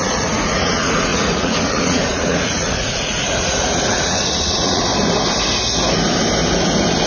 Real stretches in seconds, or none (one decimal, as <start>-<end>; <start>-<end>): 4.9-7.1